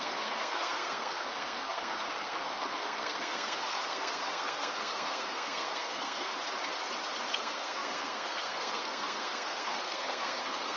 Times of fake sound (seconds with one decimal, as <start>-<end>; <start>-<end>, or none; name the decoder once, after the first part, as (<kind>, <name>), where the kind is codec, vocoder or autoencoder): 0.0-6.3 (codec, SNAC); 7.3-10.8